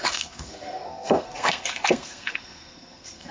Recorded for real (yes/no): no